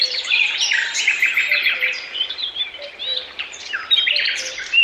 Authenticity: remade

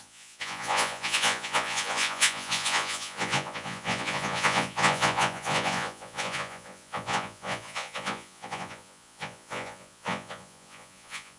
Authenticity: remade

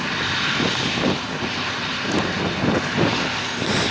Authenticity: recorded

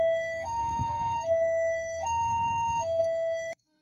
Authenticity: remade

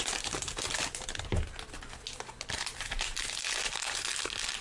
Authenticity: recorded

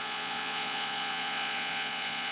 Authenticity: remade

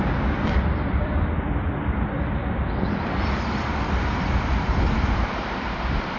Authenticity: remade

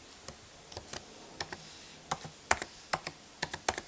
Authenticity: recorded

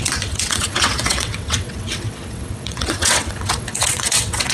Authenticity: remade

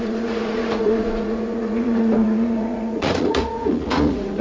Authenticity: remade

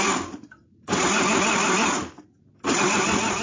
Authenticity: recorded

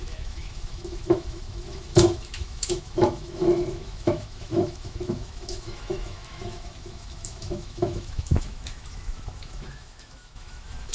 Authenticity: remade